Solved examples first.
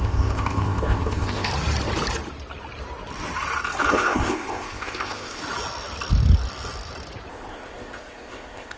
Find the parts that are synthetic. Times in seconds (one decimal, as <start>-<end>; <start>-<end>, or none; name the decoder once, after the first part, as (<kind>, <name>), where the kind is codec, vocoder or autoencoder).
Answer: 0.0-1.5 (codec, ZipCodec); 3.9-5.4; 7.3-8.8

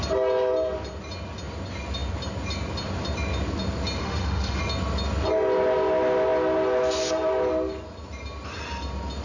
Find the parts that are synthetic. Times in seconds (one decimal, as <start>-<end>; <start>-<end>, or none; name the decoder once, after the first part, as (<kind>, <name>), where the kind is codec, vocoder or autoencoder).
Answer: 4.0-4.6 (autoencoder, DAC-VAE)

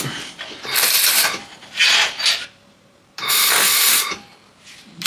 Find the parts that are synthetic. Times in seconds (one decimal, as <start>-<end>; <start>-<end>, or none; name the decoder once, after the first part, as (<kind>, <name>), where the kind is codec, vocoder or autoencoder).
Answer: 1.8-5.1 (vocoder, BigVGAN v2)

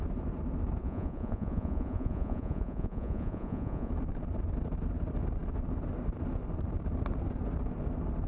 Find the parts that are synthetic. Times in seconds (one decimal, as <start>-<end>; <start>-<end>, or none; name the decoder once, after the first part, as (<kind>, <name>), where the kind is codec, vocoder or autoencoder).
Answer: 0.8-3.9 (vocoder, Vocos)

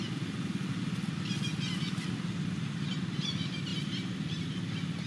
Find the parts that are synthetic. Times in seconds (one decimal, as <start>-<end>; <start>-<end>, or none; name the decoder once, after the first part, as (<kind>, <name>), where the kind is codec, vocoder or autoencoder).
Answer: none

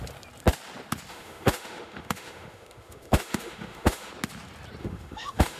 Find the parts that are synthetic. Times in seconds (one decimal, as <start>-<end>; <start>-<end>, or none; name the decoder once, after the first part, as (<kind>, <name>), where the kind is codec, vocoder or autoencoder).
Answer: 1.1-4.1 (autoencoder, DAC-VAE); 4.8-5.6